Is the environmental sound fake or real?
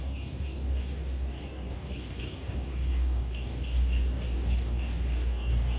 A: fake